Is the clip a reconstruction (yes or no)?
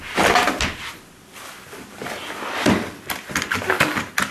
no